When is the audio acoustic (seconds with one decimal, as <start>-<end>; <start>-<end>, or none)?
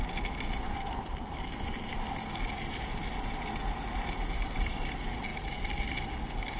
0.0-6.6